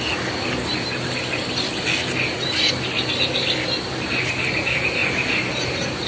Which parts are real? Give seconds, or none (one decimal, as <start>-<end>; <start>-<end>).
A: 0.0-6.1